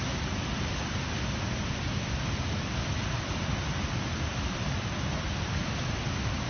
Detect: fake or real real